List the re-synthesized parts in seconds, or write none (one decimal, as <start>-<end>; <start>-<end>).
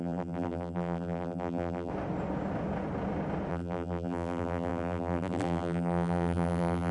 0.0-1.9; 3.5-6.9